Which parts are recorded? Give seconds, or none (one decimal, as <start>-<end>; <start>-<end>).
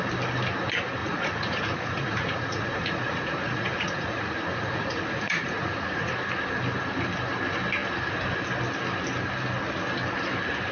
0.0-1.0; 6.1-10.7